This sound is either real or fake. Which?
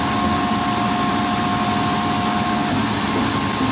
real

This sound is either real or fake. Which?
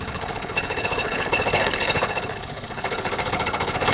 fake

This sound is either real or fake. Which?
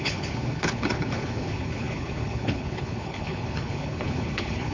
fake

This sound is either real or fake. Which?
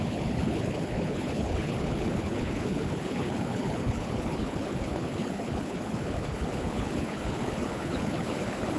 fake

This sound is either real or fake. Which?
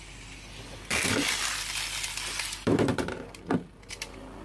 fake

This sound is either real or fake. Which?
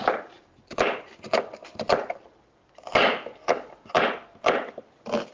real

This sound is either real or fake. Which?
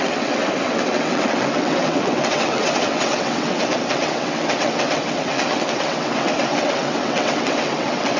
fake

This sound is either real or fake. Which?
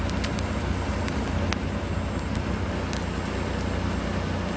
real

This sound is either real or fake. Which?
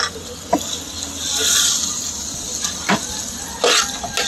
real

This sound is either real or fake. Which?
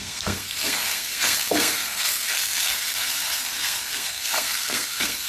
fake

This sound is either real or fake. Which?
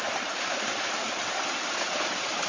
fake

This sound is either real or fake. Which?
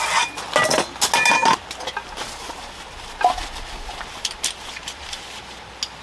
real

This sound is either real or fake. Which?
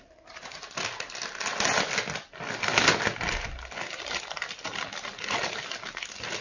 real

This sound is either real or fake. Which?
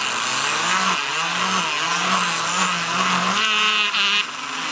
real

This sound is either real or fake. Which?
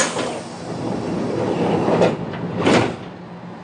real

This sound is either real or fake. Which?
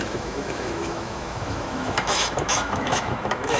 fake